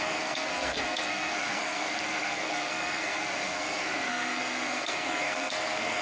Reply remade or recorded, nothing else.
remade